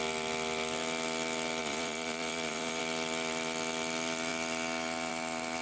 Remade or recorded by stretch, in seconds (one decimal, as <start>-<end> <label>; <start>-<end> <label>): 0.0-1.6 recorded; 1.6-2.8 remade; 2.8-5.6 recorded